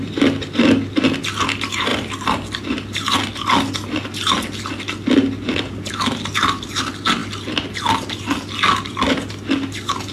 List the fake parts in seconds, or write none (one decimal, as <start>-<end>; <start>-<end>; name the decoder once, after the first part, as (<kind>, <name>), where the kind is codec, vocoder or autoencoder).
none